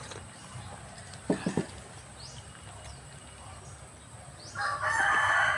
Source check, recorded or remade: recorded